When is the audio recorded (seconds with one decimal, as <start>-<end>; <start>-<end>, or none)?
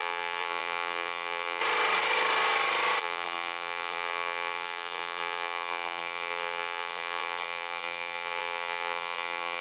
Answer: 1.6-3.0